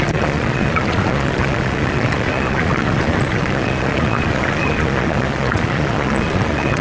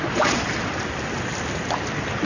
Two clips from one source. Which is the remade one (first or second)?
first